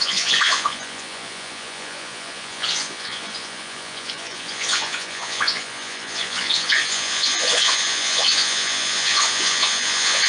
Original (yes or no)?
no